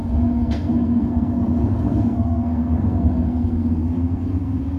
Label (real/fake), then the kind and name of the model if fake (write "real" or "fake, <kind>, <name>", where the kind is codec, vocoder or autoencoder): fake, codec, SNAC